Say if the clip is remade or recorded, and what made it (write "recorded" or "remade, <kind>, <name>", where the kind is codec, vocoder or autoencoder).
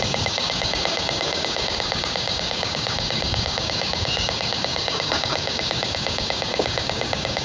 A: remade, codec, DAC